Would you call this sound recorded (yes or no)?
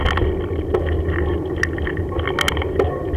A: yes